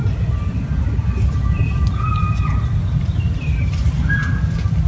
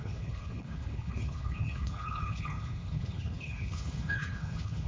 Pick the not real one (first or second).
second